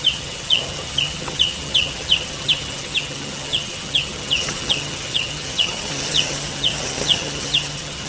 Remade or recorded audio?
remade